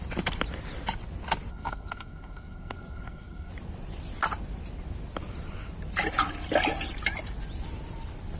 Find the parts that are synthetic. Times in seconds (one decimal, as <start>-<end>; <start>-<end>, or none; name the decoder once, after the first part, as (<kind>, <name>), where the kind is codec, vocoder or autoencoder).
1.5-3.5 (codec, SNAC)